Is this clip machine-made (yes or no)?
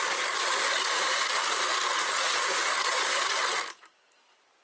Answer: no